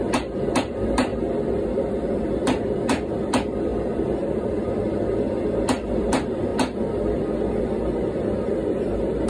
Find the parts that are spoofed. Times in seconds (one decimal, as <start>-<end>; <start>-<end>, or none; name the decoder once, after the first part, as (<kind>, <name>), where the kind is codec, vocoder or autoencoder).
0.0-1.1 (vocoder, BigVGAN v2); 1.9-6.5; 7.6-9.3